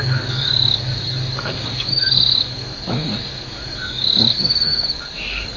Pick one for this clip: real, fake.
fake